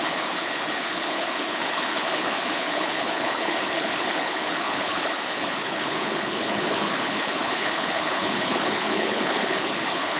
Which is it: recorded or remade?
remade